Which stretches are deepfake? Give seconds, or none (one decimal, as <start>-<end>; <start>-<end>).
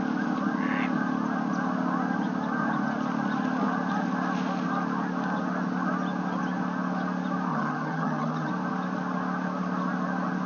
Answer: 7.5-8.5